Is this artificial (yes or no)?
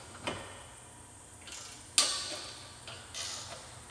no